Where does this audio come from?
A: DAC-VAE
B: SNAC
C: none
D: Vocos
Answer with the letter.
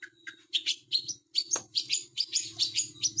C